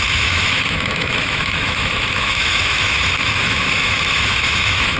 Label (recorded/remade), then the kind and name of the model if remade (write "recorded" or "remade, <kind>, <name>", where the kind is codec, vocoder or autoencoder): remade, autoencoder, DAC-VAE